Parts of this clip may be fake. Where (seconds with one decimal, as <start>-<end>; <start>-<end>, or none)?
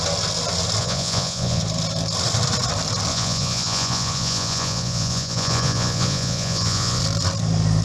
0.8-1.6; 3.1-7.0